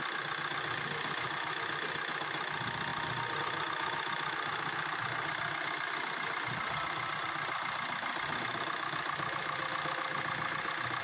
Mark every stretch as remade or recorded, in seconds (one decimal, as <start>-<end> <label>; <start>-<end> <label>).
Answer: 0.0-11.0 recorded